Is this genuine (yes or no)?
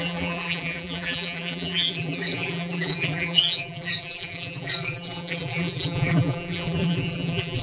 no